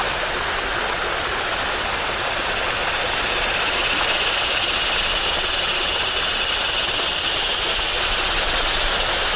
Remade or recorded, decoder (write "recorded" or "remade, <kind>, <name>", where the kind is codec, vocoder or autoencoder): recorded